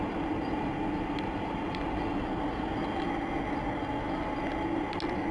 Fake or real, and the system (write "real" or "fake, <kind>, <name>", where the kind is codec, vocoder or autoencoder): real